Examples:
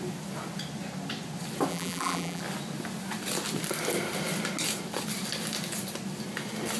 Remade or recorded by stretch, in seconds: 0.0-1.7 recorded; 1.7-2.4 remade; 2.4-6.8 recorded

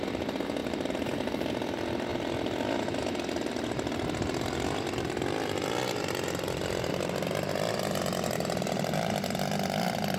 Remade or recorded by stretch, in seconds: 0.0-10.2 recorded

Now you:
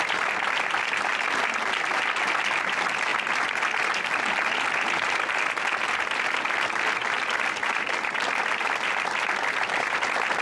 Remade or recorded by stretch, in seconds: 0.0-3.1 remade; 3.1-6.7 recorded; 6.7-10.4 remade

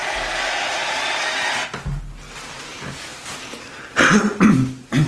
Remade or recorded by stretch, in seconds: 0.0-5.1 recorded

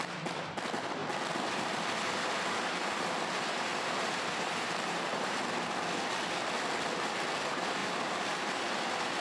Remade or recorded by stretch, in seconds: 0.0-3.7 recorded; 3.7-5.4 remade; 5.4-7.8 recorded; 7.8-8.6 remade; 8.6-9.2 recorded

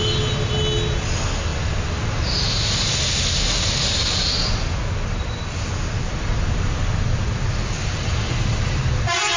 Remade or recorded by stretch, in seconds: 0.0-7.8 recorded; 7.8-8.8 remade; 8.8-9.4 recorded